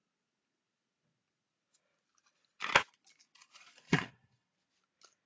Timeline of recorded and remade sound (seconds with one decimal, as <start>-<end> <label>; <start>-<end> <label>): 0.0-3.4 recorded; 3.4-4.5 remade; 4.5-5.3 recorded